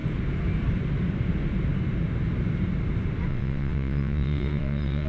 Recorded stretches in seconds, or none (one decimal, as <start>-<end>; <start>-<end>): 0.0-3.3